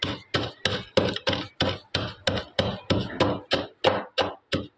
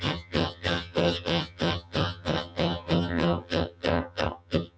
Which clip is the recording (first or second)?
first